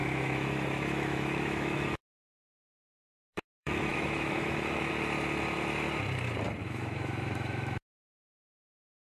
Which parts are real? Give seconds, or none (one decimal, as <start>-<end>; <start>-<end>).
4.9-6.6; 7.9-9.0

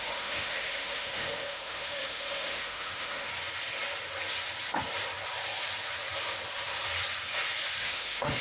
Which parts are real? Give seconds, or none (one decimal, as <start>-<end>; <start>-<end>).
3.3-7.8

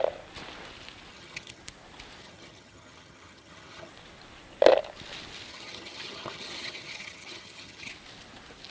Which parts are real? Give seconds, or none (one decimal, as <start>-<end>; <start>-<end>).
0.0-1.1; 1.6-2.2; 3.9-5.5; 7.9-8.7